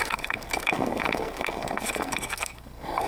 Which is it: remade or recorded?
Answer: remade